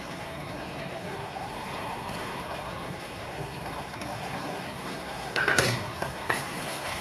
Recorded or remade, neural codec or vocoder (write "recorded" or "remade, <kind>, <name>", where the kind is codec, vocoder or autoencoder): remade, codec, SNAC